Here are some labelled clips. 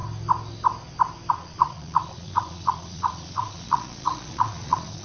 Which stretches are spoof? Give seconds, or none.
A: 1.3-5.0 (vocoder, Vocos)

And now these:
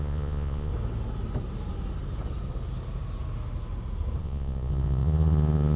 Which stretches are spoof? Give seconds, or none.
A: 0.0-0.7 (vocoder, Vocos); 4.2-5.8

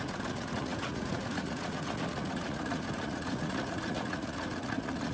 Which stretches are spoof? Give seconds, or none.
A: 0.0-5.1 (vocoder, Vocos)

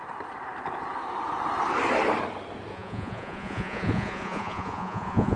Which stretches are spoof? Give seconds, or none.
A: 2.7-5.4 (vocoder, Vocos)

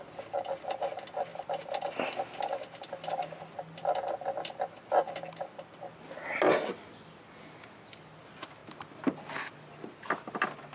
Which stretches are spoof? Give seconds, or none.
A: none

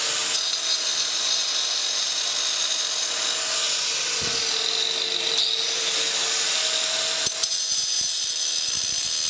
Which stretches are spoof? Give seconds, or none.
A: 7.4-8.0 (vocoder, Vocos)